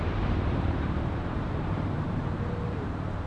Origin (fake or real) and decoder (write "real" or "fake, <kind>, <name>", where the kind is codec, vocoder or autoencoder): fake, vocoder, BigVGAN v2